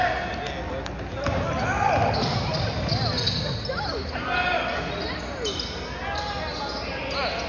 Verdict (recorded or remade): recorded